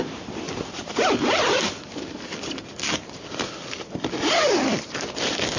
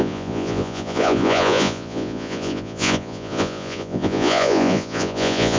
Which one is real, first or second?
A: first